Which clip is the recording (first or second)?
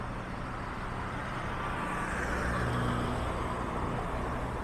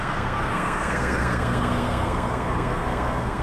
first